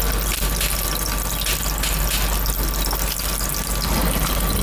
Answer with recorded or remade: recorded